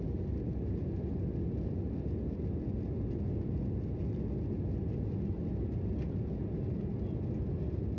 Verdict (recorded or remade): recorded